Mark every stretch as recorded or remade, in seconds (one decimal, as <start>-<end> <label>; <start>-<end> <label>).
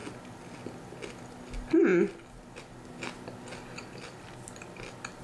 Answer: 0.0-5.2 recorded